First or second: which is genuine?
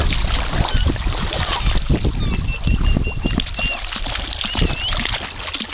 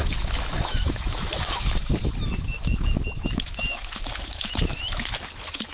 first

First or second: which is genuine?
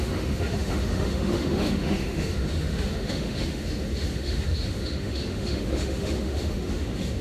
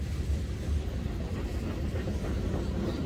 second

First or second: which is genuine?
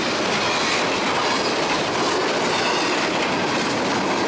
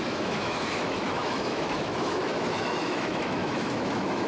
first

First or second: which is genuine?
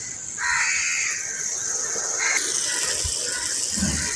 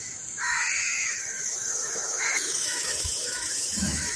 first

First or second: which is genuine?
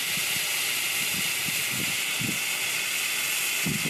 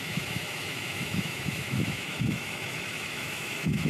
first